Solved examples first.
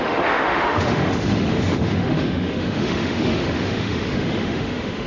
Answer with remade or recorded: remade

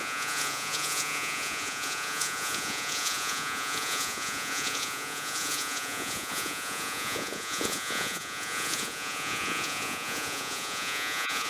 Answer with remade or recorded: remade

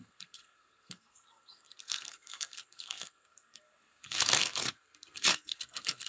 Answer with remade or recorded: remade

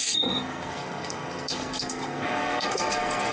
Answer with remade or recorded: remade